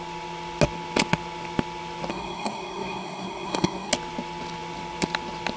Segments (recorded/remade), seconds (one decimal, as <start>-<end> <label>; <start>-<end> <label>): 0.0-2.1 recorded; 2.1-3.9 remade; 3.9-5.6 recorded